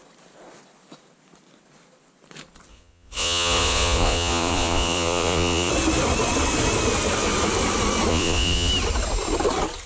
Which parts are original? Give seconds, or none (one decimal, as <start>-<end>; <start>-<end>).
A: 0.0-2.7; 5.7-8.1; 8.7-9.9